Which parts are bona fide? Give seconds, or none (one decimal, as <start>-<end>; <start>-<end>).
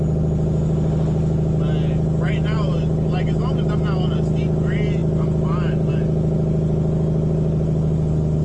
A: 0.0-8.4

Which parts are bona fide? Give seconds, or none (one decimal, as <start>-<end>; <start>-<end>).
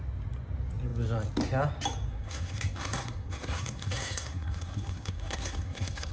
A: 0.0-2.1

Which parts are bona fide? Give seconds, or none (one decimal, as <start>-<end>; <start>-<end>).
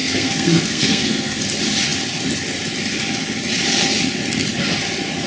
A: 1.4-5.3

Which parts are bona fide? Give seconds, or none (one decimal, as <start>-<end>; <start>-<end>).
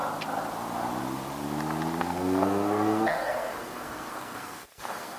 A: 0.0-2.0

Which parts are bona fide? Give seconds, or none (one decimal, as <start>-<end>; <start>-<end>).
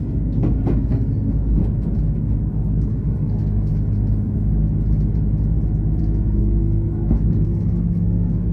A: 1.6-2.2; 3.7-6.0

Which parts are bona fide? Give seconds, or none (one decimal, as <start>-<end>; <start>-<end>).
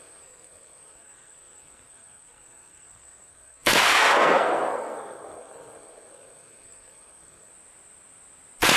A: 7.5-8.8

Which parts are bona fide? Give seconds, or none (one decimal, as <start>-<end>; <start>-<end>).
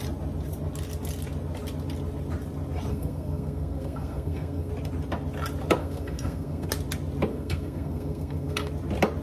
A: 0.0-2.9; 4.7-5.8; 6.7-7.3; 8.7-9.2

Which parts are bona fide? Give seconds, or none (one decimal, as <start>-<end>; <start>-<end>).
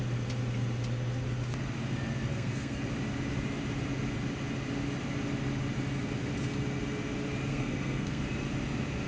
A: 0.0-2.3; 2.8-7.5; 8.2-9.1